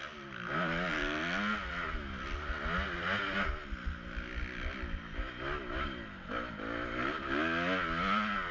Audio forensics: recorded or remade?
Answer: recorded